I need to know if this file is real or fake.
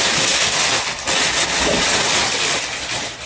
real